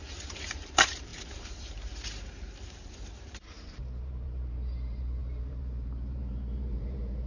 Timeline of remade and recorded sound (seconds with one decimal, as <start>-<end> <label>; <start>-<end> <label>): 0.0-7.3 remade